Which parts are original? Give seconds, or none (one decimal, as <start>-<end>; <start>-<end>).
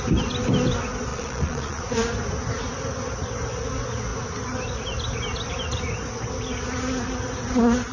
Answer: 0.0-1.1; 1.8-7.9